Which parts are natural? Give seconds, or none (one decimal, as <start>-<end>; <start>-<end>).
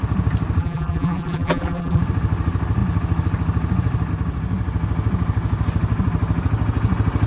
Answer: 0.0-0.6; 2.0-7.3